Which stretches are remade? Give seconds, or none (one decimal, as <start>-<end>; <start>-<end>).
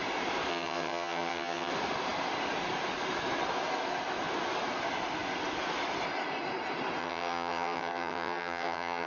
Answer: 0.5-1.7; 7.0-9.1